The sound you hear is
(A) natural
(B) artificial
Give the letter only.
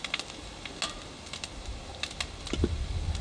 A